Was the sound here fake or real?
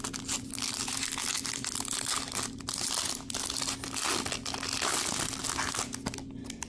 real